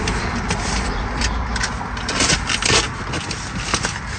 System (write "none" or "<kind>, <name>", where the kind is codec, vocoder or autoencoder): none